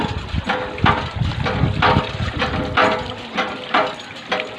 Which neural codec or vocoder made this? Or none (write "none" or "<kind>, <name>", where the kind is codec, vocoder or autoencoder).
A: none